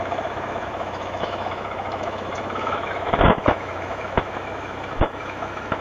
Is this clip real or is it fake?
fake